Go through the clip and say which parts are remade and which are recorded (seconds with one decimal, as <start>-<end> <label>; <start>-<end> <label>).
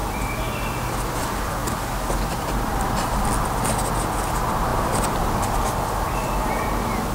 0.0-1.2 remade; 1.2-1.6 recorded; 1.6-2.9 remade; 2.9-4.7 recorded; 4.7-5.2 remade; 5.2-7.1 recorded